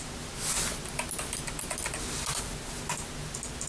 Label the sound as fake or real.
real